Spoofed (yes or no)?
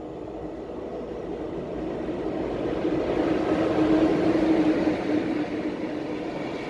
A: no